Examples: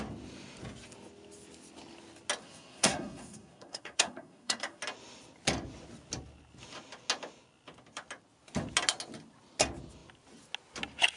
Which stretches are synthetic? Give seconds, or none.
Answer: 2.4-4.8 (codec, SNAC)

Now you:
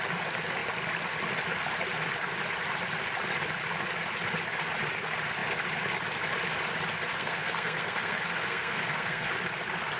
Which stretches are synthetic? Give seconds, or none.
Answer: 7.1-9.3 (codec, SNAC)